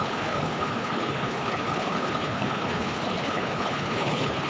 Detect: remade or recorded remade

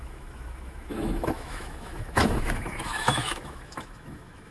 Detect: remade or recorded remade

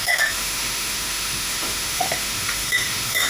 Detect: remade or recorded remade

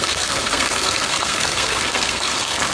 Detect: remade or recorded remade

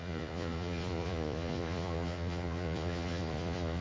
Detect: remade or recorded remade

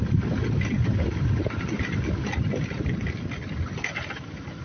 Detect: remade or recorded recorded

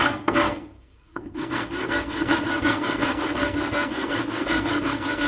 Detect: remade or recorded remade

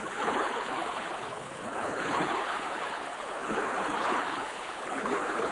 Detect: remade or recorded remade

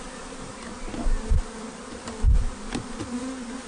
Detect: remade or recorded recorded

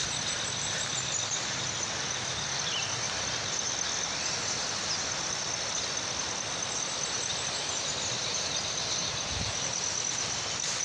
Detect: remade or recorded recorded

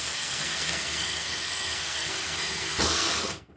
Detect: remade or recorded remade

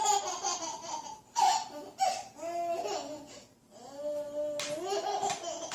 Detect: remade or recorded recorded